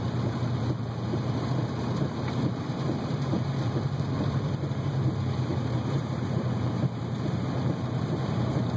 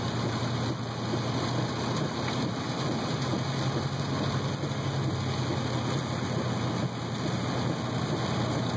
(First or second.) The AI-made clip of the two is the first